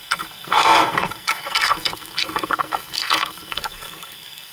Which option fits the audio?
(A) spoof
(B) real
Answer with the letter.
A